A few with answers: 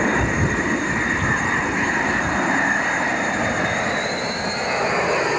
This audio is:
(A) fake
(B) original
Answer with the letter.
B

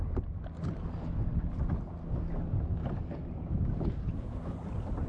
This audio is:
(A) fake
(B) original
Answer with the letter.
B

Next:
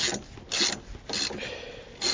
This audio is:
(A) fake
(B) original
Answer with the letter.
B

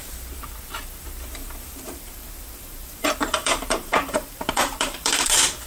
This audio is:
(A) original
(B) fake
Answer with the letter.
B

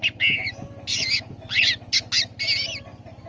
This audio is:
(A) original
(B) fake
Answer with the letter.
A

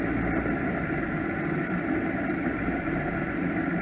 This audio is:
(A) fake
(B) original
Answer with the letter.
B